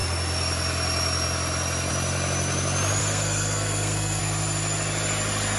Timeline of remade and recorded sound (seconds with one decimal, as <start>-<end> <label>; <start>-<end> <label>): 0.0-3.0 recorded; 3.0-4.2 remade; 4.2-5.6 recorded